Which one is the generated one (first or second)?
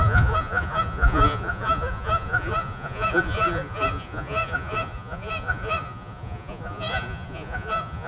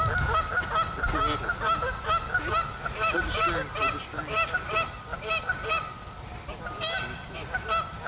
first